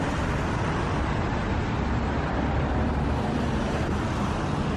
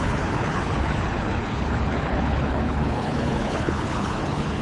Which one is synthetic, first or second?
second